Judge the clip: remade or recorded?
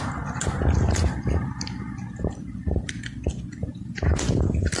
recorded